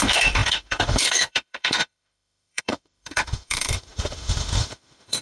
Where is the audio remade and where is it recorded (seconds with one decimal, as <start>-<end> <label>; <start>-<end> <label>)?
0.0-5.2 remade